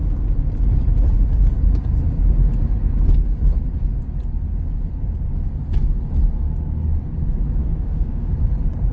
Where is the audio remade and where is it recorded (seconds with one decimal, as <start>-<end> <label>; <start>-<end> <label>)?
0.0-7.6 recorded; 7.6-8.3 remade; 8.3-8.9 recorded